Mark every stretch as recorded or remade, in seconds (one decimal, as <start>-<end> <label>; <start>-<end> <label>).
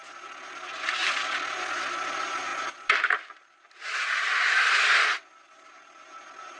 0.0-6.6 recorded